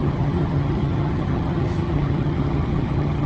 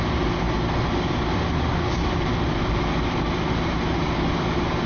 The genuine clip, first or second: second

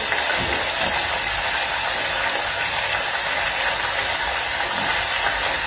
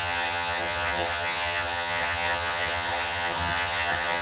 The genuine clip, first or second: first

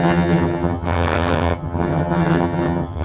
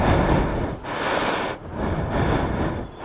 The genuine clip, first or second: second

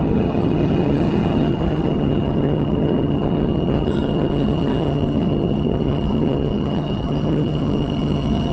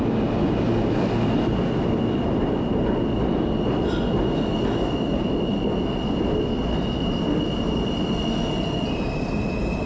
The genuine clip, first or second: second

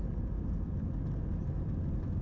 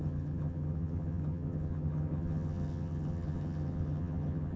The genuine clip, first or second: first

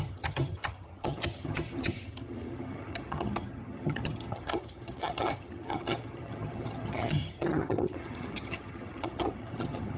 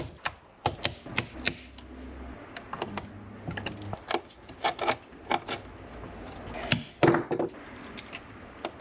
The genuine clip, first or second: second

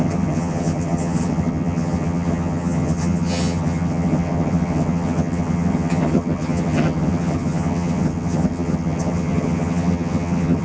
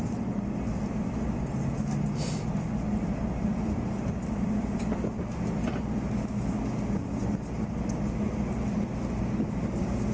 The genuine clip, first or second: second